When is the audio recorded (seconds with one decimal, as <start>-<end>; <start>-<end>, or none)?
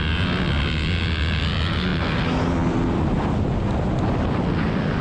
0.0-5.0